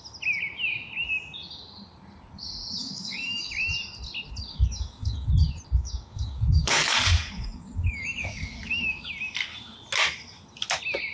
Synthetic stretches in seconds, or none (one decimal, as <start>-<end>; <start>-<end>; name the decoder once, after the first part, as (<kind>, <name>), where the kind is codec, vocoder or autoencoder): 2.8-3.5 (codec, DAC); 4.5-5.3; 5.8-9.1